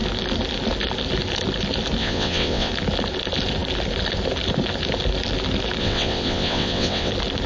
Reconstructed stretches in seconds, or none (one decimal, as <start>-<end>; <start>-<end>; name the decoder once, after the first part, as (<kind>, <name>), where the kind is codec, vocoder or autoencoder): 2.0-2.7 (vocoder, WaveNeXt); 5.8-7.1